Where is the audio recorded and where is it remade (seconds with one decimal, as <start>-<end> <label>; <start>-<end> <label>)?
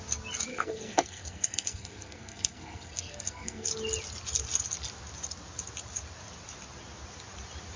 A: 0.0-0.5 recorded; 0.5-3.7 remade; 3.7-7.8 recorded